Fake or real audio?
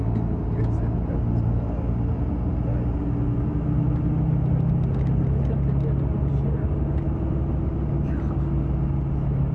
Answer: real